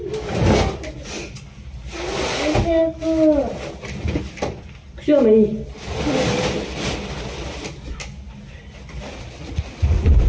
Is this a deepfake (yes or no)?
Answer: no